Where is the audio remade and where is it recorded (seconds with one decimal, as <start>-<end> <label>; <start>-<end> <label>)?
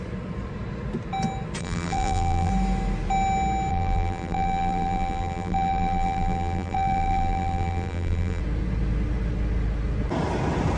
0.0-1.6 recorded; 1.6-2.5 remade; 2.5-3.7 recorded; 3.7-8.4 remade; 8.4-10.8 recorded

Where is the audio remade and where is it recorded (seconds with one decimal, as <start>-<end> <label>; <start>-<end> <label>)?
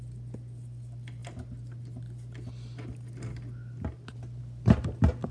0.0-5.3 recorded